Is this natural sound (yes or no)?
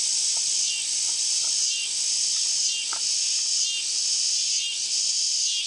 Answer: yes